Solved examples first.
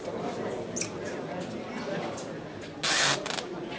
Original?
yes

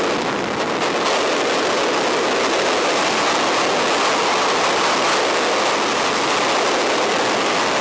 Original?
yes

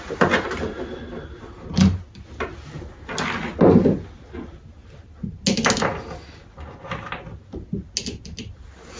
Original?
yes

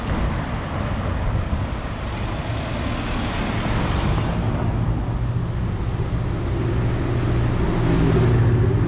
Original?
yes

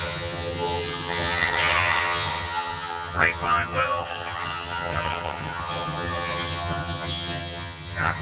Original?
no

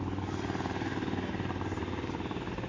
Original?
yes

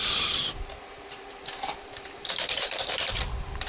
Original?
no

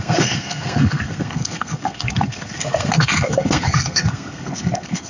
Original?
no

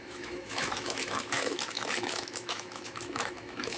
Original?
no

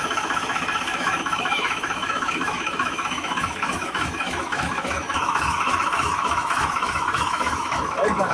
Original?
no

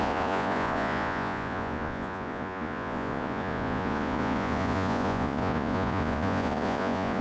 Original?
no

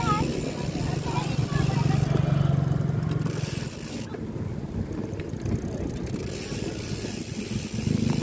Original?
yes